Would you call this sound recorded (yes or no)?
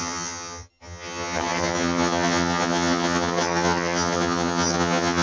no